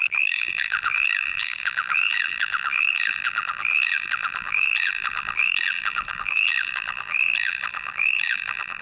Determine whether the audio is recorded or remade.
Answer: remade